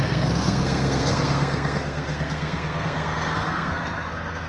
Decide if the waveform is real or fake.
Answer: fake